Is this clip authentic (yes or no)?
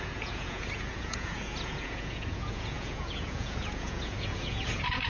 no